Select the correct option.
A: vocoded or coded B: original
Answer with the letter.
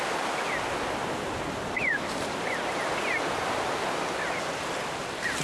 B